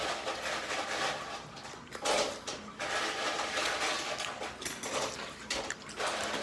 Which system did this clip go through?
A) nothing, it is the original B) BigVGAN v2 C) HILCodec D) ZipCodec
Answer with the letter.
A